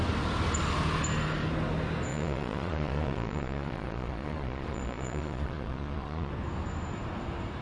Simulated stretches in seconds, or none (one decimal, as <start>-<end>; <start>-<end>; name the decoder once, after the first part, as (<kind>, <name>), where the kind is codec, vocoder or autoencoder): 2.1-6.3 (vocoder, Vocos)